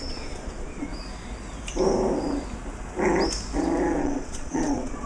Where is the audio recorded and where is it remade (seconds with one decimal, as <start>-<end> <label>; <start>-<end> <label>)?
0.0-0.9 remade; 0.9-4.0 recorded; 4.0-5.1 remade